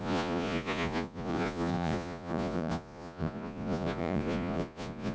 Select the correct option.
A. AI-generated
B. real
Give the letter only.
A